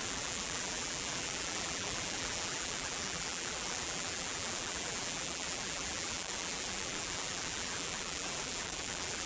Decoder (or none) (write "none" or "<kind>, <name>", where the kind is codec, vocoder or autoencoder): vocoder, BigVGAN v2